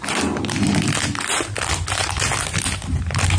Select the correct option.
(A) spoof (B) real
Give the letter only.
B